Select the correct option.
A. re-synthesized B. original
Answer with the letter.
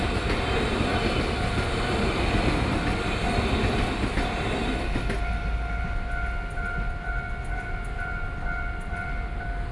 B